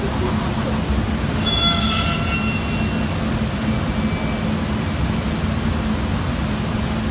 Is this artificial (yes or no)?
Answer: no